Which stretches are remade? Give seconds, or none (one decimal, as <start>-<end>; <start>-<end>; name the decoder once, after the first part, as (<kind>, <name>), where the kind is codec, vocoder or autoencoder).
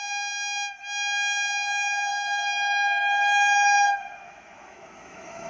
2.1-5.5 (autoencoder, DAC-VAE)